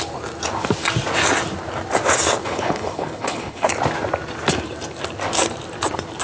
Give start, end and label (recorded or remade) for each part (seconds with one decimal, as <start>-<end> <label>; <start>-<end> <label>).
0.0-2.4 recorded; 2.4-3.7 remade; 3.7-6.2 recorded